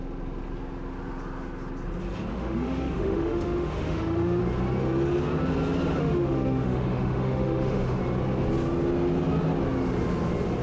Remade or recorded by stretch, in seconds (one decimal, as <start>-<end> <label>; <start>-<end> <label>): 0.0-2.3 recorded; 2.3-4.4 remade; 4.4-6.0 recorded; 6.0-8.0 remade; 8.0-10.6 recorded